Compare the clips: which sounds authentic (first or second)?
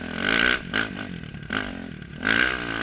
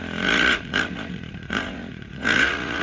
first